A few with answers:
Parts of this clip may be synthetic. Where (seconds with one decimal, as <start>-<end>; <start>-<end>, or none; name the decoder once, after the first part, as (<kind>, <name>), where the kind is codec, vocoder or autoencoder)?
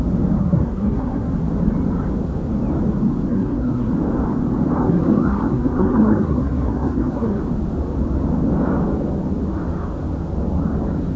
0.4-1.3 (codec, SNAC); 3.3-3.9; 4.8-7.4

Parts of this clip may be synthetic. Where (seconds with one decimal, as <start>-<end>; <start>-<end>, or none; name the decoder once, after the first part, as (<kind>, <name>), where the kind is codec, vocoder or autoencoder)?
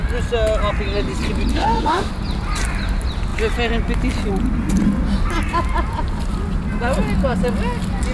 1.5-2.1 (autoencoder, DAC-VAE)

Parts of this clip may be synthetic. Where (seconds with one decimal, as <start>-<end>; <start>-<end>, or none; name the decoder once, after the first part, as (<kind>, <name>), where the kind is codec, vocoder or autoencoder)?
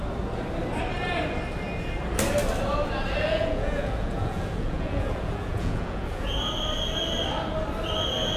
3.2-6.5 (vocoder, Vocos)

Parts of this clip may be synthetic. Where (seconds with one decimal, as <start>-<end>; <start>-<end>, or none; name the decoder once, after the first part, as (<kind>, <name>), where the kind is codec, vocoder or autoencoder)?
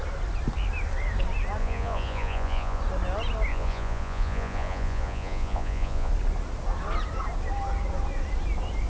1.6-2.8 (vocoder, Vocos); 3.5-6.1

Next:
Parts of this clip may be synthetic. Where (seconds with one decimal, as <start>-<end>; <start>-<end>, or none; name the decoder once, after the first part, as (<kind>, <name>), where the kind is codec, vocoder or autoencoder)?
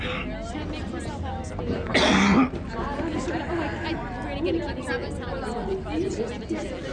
none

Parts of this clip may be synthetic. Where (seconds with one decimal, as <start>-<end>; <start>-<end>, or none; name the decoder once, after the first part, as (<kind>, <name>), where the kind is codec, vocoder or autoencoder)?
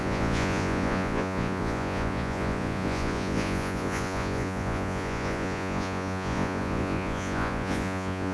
0.0-8.3 (vocoder, Vocos)